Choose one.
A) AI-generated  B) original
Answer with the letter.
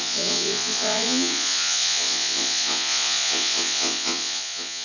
A